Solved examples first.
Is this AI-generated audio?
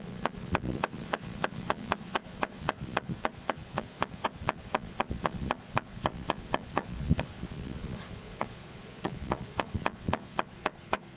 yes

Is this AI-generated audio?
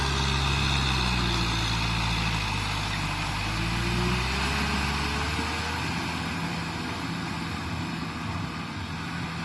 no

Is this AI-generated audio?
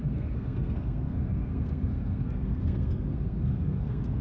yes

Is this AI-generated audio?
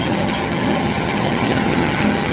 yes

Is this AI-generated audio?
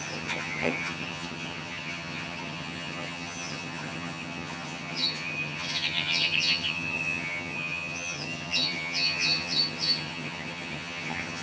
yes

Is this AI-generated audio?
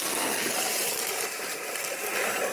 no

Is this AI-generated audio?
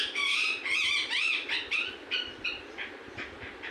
yes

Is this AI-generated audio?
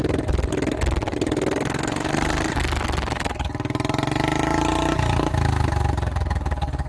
no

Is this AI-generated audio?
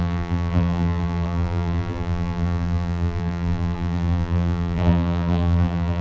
yes